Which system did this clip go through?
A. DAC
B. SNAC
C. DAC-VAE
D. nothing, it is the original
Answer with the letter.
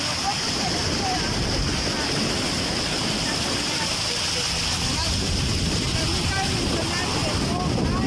D